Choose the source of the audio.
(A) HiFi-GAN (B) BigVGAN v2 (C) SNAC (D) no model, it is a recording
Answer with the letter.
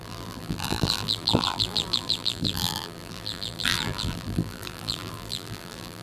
B